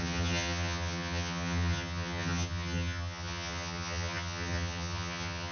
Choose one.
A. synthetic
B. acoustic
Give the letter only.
A